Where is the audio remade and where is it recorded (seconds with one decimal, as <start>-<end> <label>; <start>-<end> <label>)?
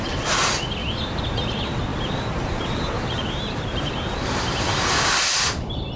0.0-0.8 recorded; 0.8-1.5 remade; 1.5-1.9 recorded; 1.9-5.2 remade; 5.2-6.0 recorded